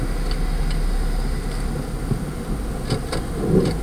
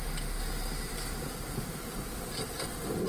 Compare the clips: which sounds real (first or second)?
first